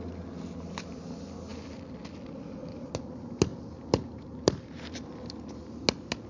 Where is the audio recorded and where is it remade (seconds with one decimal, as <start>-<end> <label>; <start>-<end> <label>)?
0.0-3.5 recorded; 3.5-5.3 remade; 5.3-6.3 recorded